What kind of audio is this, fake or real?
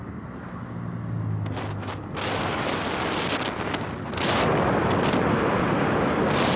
real